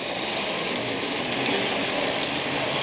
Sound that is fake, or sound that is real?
real